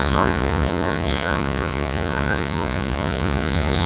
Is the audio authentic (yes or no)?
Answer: no